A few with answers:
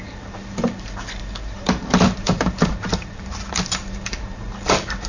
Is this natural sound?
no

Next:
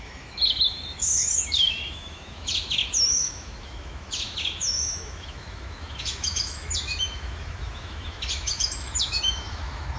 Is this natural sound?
no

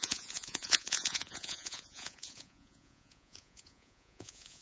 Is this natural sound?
no